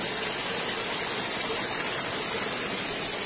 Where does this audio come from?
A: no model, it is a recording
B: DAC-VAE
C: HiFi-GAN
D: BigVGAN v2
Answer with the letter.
A